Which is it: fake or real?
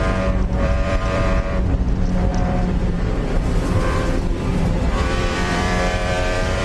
fake